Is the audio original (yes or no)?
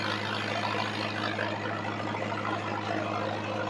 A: yes